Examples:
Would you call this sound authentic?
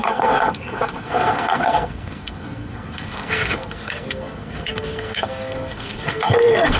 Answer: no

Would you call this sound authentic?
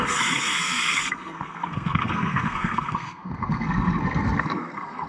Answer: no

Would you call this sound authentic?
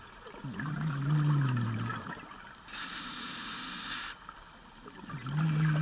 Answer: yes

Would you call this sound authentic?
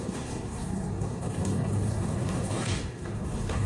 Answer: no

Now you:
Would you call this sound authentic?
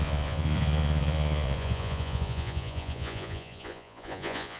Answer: no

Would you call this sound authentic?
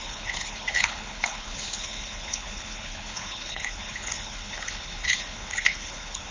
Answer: no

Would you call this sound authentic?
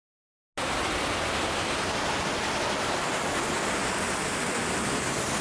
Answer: yes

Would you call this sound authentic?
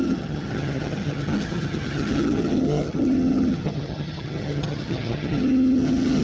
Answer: no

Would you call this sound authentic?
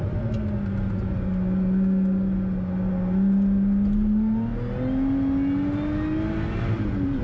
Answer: yes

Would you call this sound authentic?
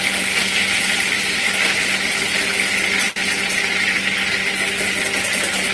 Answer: yes